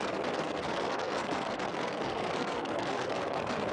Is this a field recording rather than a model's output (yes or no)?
no